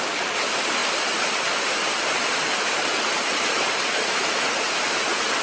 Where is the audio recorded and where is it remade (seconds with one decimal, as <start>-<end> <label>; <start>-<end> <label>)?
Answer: 0.0-2.9 recorded; 2.9-4.7 remade; 4.7-5.4 recorded